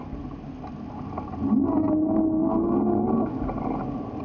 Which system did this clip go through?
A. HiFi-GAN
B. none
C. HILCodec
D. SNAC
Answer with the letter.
B